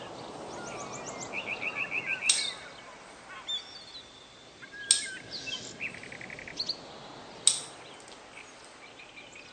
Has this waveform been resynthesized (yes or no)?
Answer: no